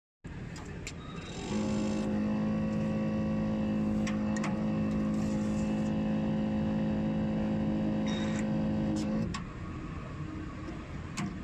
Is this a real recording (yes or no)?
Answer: yes